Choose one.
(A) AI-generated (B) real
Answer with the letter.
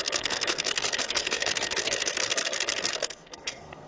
A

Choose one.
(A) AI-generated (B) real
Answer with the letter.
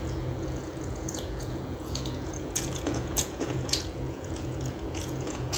A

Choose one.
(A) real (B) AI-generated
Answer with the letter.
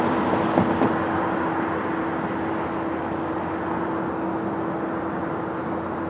A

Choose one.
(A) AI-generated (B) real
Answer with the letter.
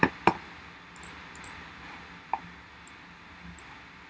B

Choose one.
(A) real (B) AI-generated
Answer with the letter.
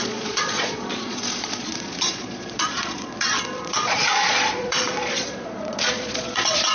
B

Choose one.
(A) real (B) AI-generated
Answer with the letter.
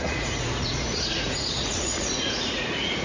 B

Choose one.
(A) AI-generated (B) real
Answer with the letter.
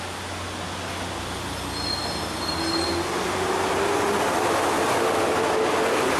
B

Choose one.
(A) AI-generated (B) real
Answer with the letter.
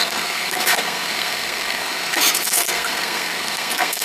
A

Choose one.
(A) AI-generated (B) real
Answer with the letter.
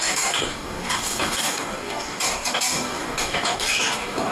A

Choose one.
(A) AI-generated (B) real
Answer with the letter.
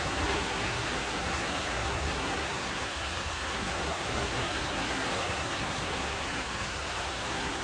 A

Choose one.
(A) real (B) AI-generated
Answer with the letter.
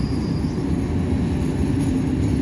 A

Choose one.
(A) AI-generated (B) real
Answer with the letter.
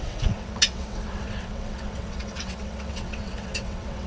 A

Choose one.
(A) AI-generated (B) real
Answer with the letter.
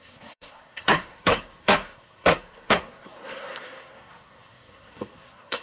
A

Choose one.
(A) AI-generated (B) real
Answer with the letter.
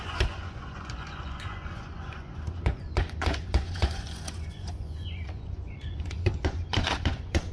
A